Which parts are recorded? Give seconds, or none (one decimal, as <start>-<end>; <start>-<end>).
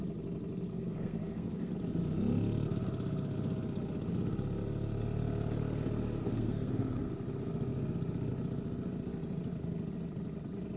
0.0-0.7; 1.7-6.2; 7.1-10.8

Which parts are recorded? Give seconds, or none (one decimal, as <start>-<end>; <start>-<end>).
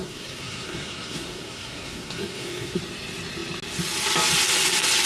2.8-5.1